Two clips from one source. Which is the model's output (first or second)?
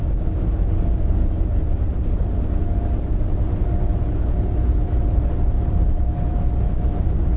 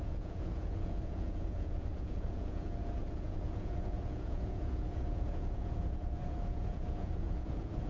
second